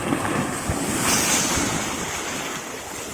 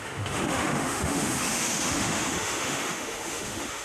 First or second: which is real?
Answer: first